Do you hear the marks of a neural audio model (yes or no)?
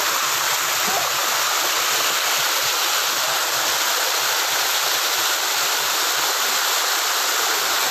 yes